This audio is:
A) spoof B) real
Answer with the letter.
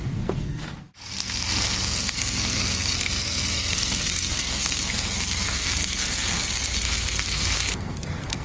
A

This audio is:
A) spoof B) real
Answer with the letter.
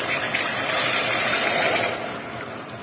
B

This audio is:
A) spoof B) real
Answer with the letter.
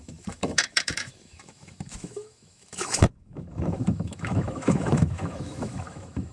A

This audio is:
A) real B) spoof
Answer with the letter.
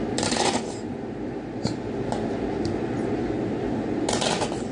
A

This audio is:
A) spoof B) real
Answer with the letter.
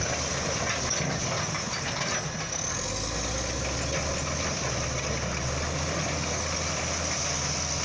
B